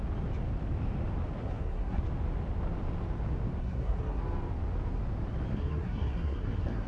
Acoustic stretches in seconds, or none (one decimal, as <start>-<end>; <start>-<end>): 0.0-1.4; 2.0-3.6; 4.2-5.5

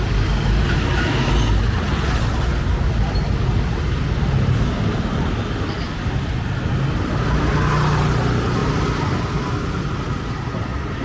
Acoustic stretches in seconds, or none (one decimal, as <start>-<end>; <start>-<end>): 0.0-11.0

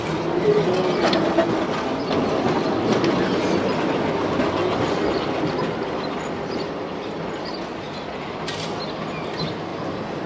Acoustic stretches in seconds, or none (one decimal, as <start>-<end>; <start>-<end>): 0.0-10.3

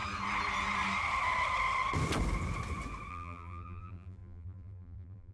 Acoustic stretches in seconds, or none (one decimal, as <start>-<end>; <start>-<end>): 0.0-3.1

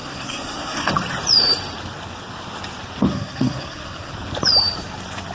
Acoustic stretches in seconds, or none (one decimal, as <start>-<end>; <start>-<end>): 0.9-3.1; 4.1-5.3

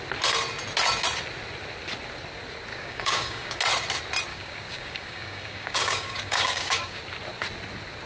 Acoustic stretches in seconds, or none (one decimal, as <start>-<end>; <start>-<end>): 0.0-2.7; 3.6-4.3; 7.0-8.1

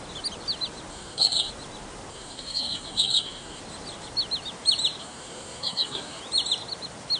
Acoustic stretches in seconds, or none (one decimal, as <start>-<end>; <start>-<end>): 0.0-0.9; 1.5-2.1; 3.6-5.0; 6.2-7.2

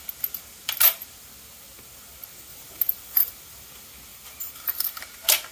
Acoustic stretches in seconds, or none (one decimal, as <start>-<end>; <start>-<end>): 0.0-2.5; 3.3-4.1; 5.0-5.5